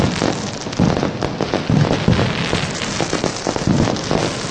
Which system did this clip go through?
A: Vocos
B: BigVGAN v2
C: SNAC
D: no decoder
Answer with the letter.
D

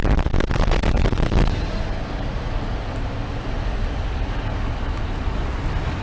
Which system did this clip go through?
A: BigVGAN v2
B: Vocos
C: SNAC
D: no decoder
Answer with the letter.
D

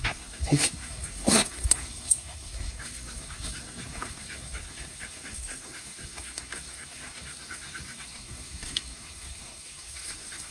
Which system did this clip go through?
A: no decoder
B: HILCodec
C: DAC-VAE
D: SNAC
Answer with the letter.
D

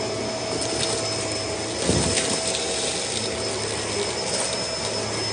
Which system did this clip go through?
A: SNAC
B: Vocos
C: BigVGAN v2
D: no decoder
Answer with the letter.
D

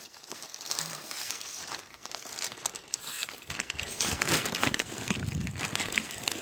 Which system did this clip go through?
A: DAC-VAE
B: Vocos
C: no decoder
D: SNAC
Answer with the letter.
D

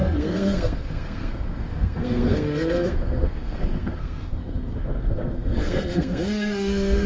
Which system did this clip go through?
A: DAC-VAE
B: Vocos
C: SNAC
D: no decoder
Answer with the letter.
C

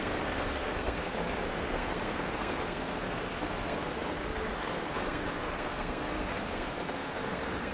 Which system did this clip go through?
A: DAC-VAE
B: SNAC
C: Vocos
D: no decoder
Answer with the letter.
B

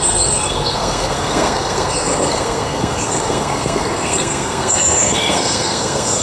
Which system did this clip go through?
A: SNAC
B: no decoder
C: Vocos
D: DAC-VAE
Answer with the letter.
A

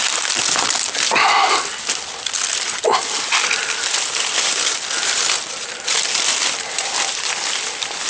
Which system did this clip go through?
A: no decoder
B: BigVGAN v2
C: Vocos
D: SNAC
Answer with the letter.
A